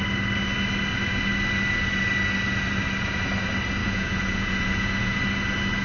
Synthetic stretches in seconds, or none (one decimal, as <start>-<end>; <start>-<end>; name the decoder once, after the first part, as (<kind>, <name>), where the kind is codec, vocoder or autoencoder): 3.8-5.2 (vocoder, Vocos)